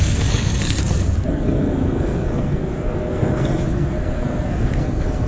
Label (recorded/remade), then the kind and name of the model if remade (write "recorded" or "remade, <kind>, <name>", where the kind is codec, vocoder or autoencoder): remade, codec, SNAC